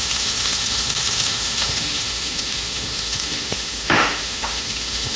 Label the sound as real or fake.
fake